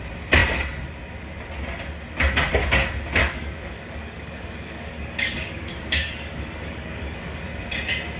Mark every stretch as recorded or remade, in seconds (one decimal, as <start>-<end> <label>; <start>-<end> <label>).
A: 0.0-3.2 recorded; 3.2-7.4 remade; 7.4-8.2 recorded